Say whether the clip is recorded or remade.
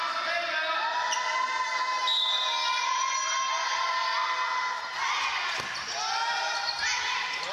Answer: recorded